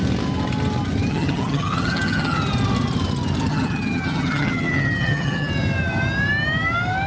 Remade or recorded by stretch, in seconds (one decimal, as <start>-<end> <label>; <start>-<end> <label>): 0.0-1.1 recorded; 1.1-2.4 remade; 2.4-3.5 recorded; 3.5-5.5 remade; 5.5-7.1 recorded